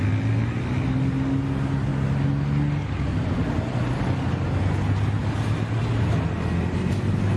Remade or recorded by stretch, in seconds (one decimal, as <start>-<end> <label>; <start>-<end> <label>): 0.0-7.4 recorded